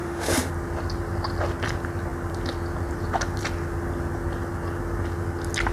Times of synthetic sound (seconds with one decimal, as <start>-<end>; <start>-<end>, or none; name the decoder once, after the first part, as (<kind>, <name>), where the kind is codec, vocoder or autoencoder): 0.0-0.5 (autoencoder, DAC-VAE)